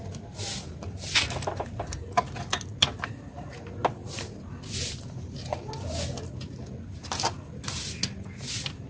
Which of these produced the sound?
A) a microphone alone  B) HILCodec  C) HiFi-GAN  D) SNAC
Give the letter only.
A